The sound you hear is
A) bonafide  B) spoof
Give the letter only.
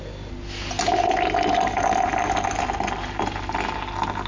A